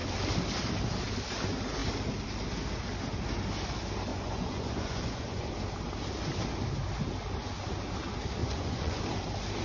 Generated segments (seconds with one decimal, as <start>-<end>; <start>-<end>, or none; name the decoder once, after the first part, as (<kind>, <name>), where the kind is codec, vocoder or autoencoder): 4.1-5.5 (vocoder, Vocos); 8.4-9.0